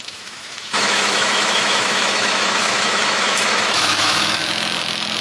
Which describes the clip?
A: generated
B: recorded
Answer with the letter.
A